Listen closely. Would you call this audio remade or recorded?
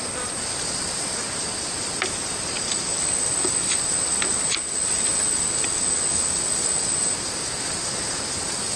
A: recorded